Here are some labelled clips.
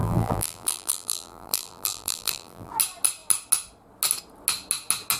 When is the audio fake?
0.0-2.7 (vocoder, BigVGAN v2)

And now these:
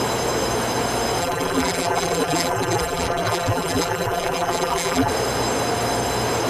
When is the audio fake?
1.2-5.1 (vocoder, BigVGAN v2)

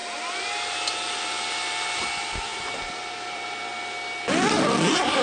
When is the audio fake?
0.0-1.2 (vocoder, BigVGAN v2); 2.5-3.6

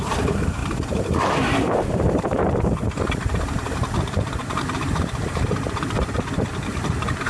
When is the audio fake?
0.0-7.3 (vocoder, BigVGAN v2)

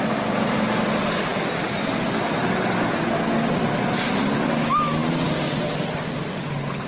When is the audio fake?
none